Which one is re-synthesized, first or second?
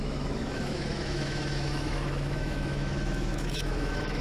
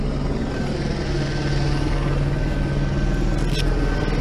first